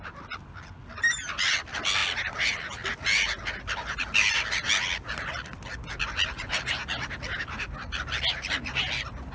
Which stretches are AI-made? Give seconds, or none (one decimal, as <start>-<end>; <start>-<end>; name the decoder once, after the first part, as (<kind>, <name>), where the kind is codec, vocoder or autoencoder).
none